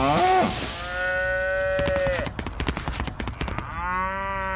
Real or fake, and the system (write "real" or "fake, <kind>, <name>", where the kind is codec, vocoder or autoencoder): real